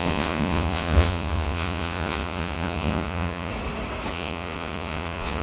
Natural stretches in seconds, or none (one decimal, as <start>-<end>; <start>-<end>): 3.5-4.1

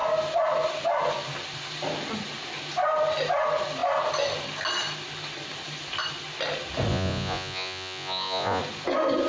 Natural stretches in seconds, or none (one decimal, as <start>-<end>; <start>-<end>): 0.0-6.9; 8.6-9.3

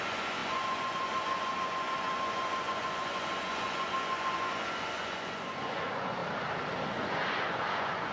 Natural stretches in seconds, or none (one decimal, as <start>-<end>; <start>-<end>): 6.2-6.9

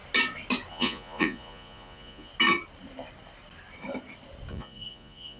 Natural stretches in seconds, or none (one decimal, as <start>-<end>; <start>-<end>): 0.0-0.7; 2.3-4.5

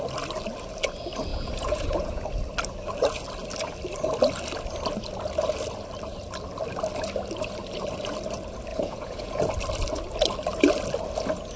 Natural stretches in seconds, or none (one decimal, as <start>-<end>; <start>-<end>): 0.0-1.3; 2.2-8.7; 9.5-11.6